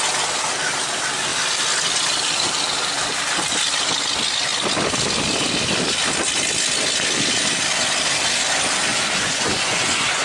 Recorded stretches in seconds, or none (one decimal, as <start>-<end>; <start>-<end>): 0.0-8.9